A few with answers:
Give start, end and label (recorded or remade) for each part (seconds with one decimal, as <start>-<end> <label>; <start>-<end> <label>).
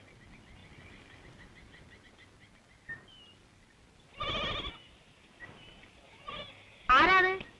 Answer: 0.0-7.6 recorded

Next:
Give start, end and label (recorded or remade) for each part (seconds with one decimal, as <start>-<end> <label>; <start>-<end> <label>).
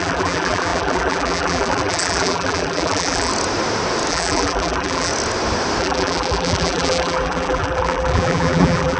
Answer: 0.0-3.3 remade; 3.3-4.1 recorded; 4.1-5.1 remade; 5.1-5.8 recorded; 5.8-9.0 remade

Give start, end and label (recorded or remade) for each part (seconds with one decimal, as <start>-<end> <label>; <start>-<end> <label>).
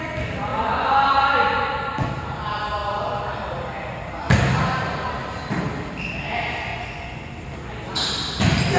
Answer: 0.0-0.5 recorded; 0.5-2.1 remade; 2.1-6.7 recorded; 6.7-7.3 remade; 7.3-8.8 recorded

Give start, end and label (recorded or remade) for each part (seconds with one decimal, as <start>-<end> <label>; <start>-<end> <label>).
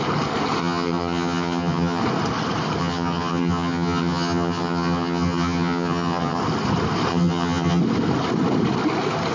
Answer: 0.0-0.6 recorded; 0.6-2.0 remade; 2.0-2.8 recorded; 2.8-6.4 remade; 6.4-7.1 recorded; 7.1-7.8 remade; 7.8-9.3 recorded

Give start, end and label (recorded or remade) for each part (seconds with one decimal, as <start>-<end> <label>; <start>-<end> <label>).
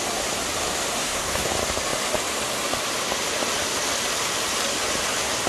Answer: 0.0-1.0 recorded; 1.0-1.5 remade; 1.5-5.5 recorded